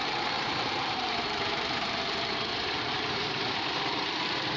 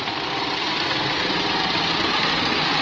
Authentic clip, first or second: second